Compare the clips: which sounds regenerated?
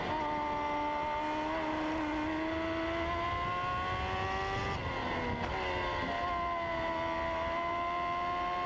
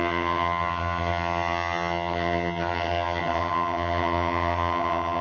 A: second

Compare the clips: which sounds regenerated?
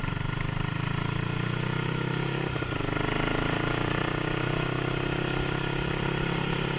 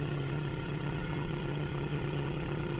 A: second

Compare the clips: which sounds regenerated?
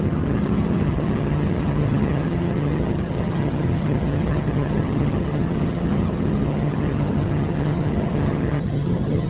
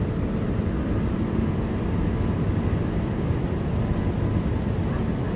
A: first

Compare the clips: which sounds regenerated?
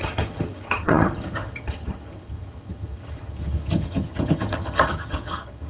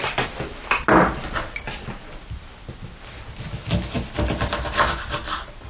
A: first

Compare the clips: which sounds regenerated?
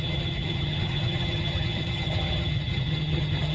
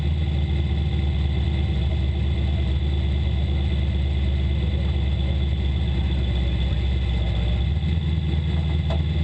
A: first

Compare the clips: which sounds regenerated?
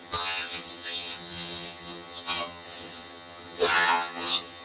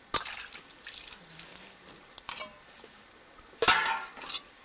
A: first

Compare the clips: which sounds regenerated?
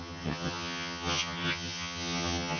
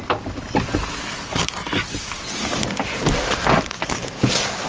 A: first